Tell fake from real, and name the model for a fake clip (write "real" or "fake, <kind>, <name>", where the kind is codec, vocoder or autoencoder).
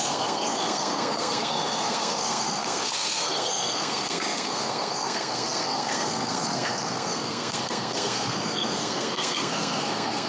fake, codec, SNAC